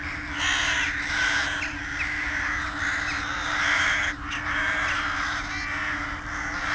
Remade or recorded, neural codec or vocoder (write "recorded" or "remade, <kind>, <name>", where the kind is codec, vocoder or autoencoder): recorded